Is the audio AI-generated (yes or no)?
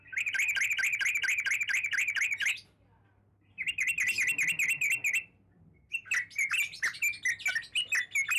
no